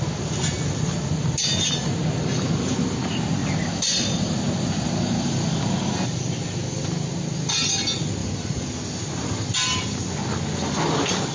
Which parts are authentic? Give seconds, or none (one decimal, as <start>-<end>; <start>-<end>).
0.0-11.3